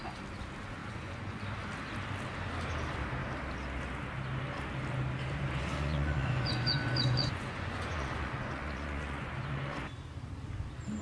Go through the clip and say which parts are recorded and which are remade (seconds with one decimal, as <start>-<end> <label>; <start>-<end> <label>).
0.0-0.8 recorded; 0.8-1.4 remade; 1.4-5.7 recorded; 5.7-9.8 remade; 9.8-11.0 recorded